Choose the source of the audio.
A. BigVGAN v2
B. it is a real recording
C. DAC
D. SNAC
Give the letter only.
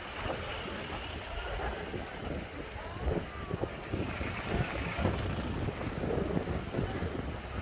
B